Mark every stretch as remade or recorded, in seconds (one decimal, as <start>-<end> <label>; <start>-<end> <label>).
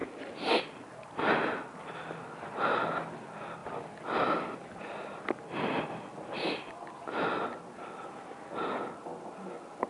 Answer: 0.0-9.9 recorded